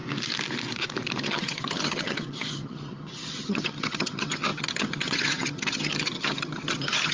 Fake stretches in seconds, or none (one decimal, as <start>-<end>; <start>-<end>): 1.2-7.1